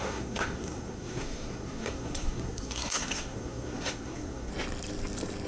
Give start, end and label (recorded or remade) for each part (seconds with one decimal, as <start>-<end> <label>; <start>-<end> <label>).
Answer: 0.0-4.5 remade; 4.5-5.5 recorded